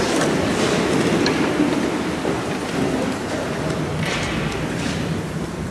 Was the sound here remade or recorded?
recorded